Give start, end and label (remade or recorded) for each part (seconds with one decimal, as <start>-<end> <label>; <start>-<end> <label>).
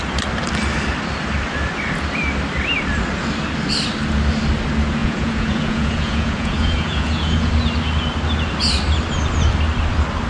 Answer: 0.0-5.0 recorded; 5.0-7.5 remade; 7.5-10.3 recorded